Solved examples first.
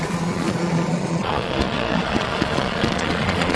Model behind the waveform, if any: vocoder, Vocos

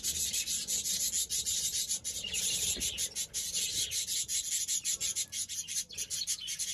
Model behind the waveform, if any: none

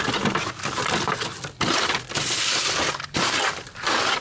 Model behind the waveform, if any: none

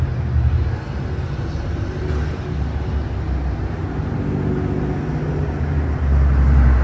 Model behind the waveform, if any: none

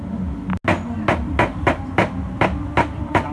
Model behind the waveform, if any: none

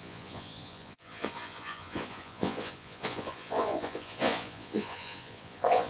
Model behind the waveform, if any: vocoder, Vocos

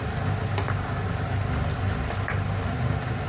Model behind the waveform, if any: none